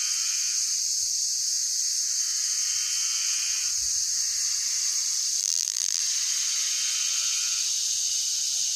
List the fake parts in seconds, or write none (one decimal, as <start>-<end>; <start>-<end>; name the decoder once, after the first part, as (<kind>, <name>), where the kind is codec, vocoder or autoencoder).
5.4-6.0 (vocoder, BigVGAN v2)